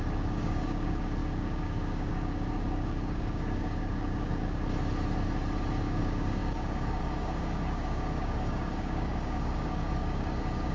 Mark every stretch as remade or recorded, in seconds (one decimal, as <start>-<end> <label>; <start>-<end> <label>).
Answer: 0.0-4.4 remade; 4.4-5.8 recorded; 5.8-10.7 remade